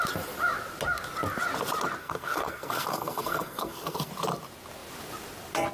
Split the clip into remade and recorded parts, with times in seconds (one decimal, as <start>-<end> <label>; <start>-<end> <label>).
0.0-2.0 recorded; 2.0-4.1 remade; 4.1-5.7 recorded